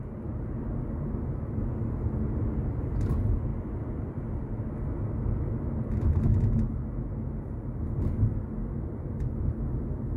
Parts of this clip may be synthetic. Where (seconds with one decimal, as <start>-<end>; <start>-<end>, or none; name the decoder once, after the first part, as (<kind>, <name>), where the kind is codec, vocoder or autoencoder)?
none